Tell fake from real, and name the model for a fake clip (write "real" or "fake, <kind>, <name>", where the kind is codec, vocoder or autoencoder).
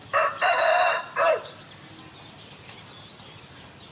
real